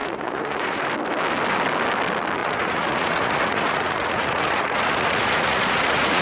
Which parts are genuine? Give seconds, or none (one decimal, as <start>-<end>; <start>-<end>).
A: 0.8-2.4